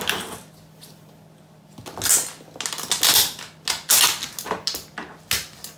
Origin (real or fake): real